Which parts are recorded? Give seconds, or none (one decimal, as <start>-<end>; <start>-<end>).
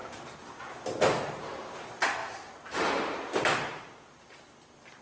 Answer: none